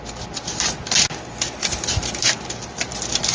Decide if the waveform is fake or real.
real